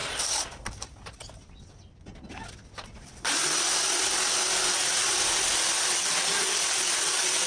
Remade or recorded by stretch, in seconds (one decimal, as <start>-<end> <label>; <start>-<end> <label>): 0.0-7.5 recorded